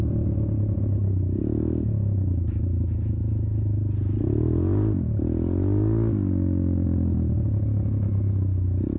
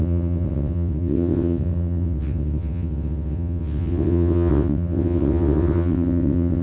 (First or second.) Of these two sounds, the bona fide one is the first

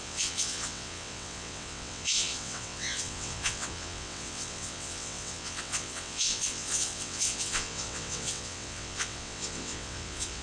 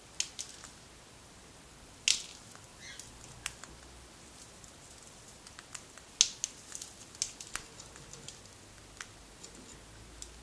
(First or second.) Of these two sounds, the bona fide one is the second